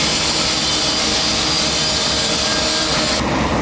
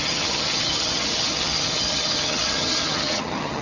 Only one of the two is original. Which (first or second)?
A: first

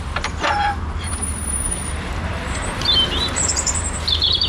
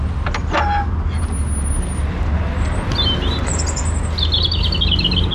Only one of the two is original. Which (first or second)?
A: second